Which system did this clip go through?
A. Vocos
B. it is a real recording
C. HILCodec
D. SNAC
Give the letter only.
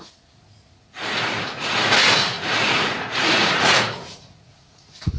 A